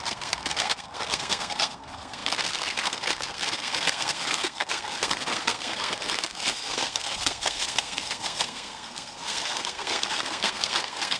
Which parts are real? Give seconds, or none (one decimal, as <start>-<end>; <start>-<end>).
none